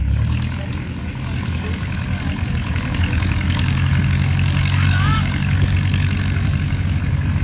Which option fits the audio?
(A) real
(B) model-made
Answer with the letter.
B